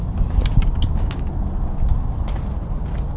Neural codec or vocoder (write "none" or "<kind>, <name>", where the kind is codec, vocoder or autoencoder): none